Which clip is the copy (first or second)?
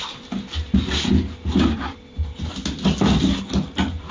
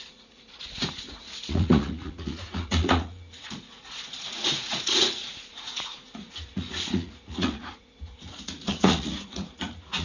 second